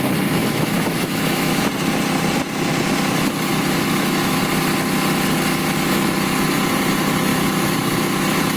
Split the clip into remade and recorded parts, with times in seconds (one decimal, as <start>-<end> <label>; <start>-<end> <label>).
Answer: 0.0-0.4 recorded; 0.4-1.6 remade; 1.6-3.5 recorded; 3.5-4.4 remade; 4.4-7.3 recorded; 7.3-7.9 remade; 7.9-8.6 recorded